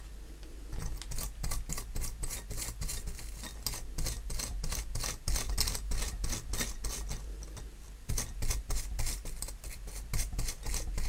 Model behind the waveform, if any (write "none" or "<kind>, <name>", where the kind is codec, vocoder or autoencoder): none